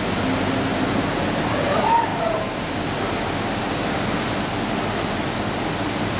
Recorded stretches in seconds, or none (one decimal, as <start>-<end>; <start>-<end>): 0.0-6.2